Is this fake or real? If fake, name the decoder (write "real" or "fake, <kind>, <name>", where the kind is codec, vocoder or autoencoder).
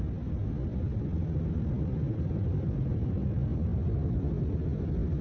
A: real